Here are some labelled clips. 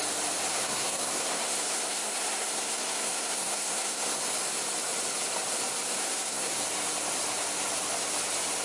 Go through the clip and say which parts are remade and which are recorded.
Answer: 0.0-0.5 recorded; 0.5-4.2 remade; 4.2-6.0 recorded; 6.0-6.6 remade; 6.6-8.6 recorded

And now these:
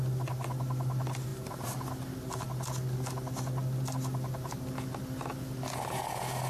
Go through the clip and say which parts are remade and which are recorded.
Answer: 0.0-6.5 recorded